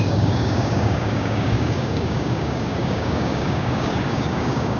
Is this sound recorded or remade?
remade